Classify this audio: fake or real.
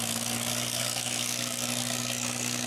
fake